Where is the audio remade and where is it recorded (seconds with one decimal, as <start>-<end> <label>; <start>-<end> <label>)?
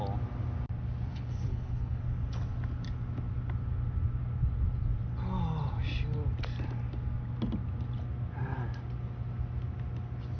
0.0-1.1 recorded; 1.1-2.0 remade; 2.0-10.4 recorded